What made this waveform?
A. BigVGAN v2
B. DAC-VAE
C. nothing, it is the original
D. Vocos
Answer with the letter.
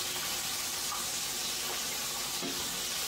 C